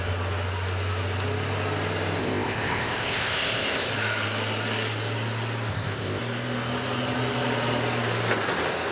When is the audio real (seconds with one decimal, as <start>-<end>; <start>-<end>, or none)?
0.0-2.2; 3.9-5.7; 6.2-8.9

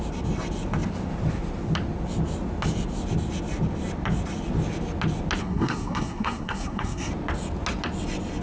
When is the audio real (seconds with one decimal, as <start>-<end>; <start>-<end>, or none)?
0.0-5.4; 7.1-8.4

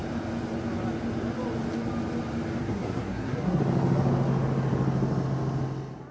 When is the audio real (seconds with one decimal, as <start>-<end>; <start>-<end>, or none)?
0.0-2.6; 3.6-6.1

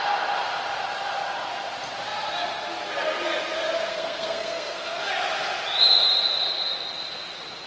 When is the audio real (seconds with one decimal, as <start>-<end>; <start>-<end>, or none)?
0.0-3.9; 5.1-7.7

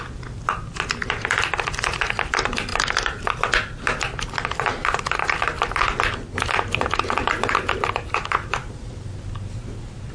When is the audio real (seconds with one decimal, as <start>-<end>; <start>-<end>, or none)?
0.0-4.7; 5.4-10.1

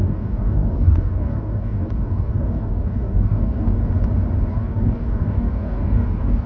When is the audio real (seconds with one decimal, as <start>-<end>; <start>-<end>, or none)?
3.8-4.5

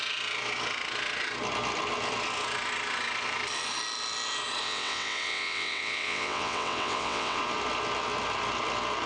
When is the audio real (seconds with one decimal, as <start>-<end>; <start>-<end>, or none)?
0.0-4.6; 7.4-9.1

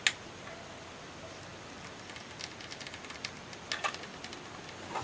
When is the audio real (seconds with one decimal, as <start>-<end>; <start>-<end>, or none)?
0.0-5.0